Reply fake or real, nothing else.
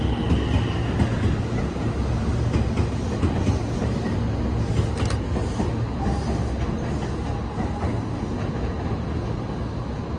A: real